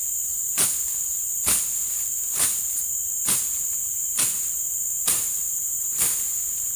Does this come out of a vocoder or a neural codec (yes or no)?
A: no